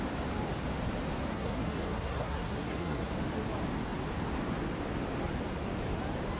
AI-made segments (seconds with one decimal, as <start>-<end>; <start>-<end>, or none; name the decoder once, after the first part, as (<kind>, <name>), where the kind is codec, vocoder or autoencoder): 1.3-3.1 (codec, SNAC)